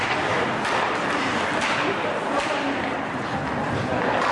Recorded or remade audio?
recorded